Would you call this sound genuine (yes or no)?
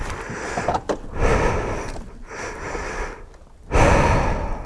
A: yes